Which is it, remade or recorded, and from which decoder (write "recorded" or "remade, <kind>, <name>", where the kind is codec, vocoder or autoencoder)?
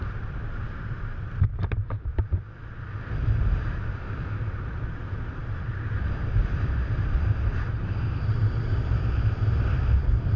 remade, vocoder, BigVGAN v2